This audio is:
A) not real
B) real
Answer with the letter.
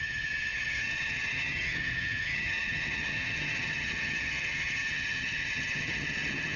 A